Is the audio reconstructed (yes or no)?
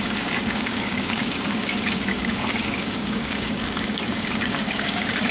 yes